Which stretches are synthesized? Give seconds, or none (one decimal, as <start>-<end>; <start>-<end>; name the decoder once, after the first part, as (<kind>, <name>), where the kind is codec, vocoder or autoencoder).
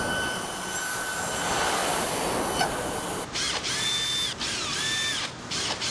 none